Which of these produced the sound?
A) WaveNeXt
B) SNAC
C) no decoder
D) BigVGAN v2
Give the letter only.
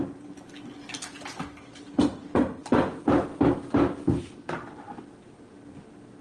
C